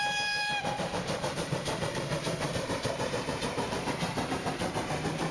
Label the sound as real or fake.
fake